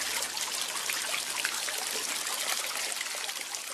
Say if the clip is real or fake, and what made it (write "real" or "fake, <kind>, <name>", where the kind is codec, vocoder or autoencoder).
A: real